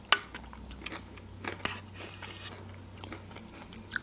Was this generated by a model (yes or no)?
no